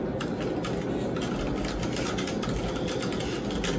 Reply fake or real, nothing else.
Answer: real